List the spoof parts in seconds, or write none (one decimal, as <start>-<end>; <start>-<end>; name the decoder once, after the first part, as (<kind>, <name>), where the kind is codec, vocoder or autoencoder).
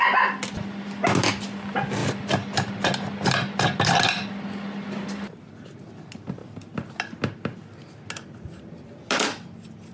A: none